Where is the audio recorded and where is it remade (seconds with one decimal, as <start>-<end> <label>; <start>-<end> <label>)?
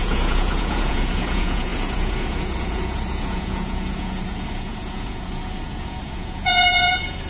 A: 0.0-7.3 remade